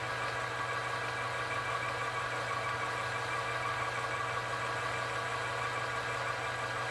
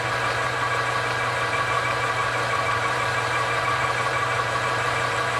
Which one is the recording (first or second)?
first